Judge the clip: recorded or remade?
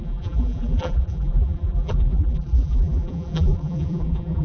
remade